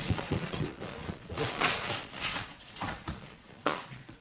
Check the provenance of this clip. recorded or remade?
remade